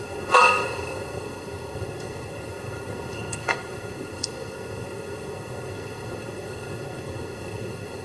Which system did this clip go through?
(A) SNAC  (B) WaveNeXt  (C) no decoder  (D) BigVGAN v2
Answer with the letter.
A